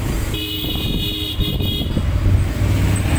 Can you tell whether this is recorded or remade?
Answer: recorded